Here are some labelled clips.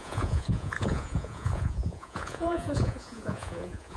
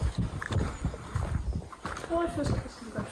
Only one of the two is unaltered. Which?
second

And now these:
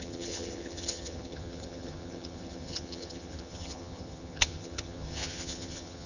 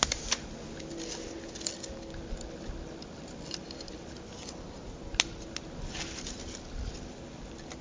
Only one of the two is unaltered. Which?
second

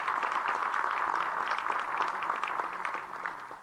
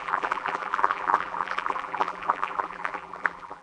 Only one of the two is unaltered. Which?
first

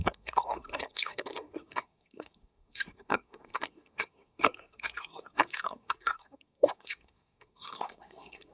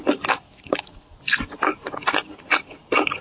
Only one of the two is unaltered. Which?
second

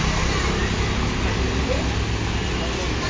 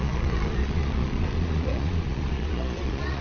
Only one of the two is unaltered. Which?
first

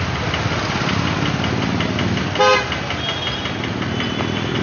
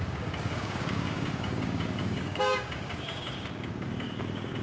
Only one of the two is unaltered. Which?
first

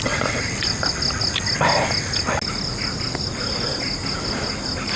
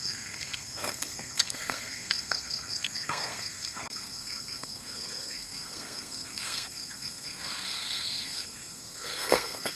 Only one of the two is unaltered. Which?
first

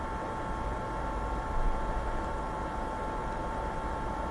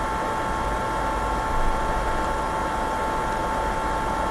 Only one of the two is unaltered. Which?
second